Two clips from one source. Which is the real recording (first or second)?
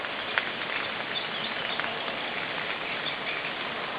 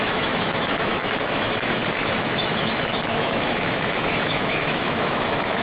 first